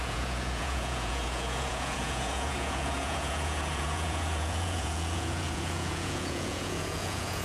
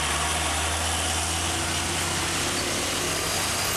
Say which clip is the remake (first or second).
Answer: first